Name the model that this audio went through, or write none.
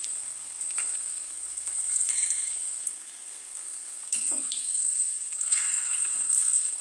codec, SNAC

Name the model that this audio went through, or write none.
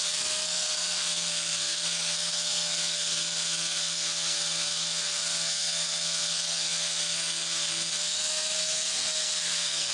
codec, SNAC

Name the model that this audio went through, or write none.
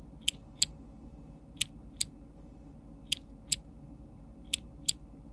none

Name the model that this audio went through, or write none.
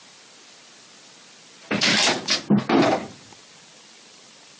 none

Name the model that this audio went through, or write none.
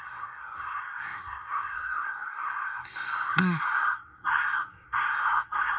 codec, SNAC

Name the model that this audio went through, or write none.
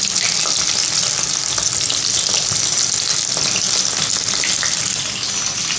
none